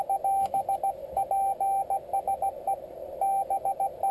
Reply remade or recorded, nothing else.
recorded